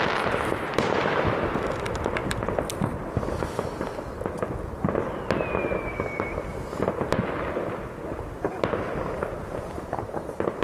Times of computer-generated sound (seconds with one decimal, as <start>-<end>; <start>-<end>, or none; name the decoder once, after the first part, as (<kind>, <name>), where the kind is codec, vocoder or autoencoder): none